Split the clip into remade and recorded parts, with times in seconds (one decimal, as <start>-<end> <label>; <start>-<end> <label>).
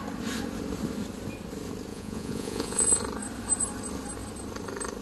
0.0-1.9 recorded; 1.9-3.0 remade; 3.0-5.0 recorded